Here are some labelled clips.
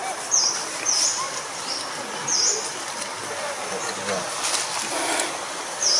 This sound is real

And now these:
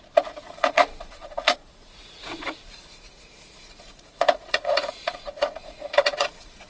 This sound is fake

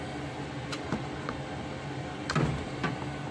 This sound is real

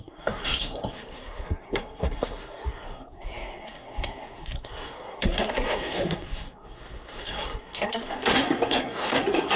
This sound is fake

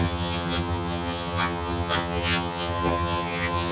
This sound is fake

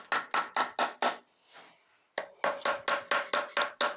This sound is real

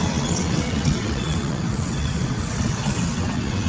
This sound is fake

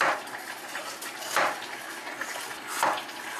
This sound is real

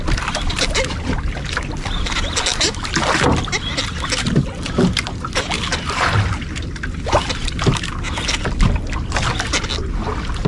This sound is real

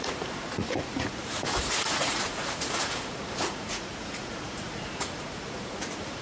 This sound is fake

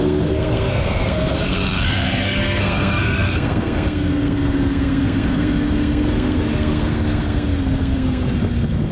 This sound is fake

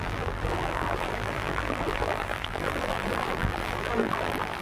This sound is fake